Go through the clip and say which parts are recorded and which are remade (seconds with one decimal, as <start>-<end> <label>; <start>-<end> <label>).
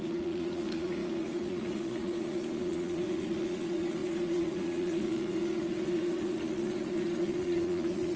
0.0-8.2 remade